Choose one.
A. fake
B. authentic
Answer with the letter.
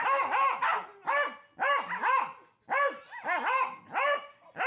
B